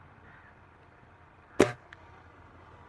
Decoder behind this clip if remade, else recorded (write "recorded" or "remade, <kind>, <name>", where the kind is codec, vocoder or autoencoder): recorded